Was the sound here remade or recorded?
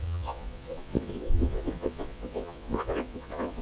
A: remade